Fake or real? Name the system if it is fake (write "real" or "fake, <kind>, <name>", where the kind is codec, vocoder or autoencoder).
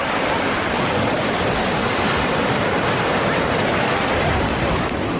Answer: fake, vocoder, BigVGAN v2